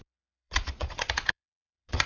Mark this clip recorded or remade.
remade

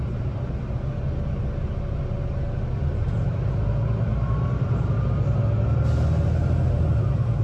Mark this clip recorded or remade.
recorded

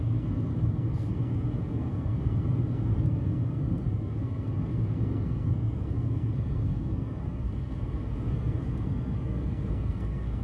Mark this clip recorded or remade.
remade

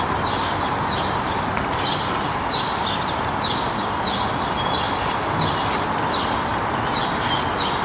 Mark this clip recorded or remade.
recorded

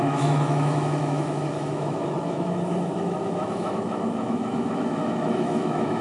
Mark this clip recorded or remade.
remade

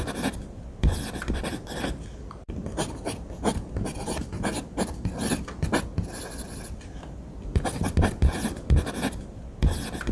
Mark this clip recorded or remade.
recorded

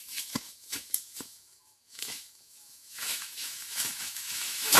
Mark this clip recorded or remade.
remade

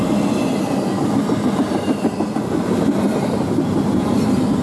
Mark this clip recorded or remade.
recorded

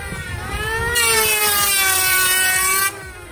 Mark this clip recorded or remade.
remade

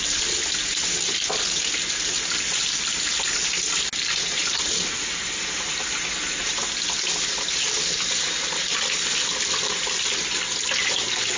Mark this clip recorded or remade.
recorded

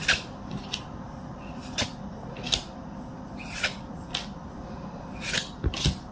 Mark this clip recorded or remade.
recorded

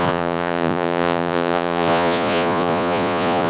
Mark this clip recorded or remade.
remade